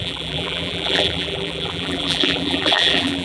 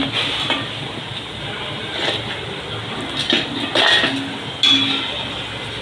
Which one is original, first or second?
second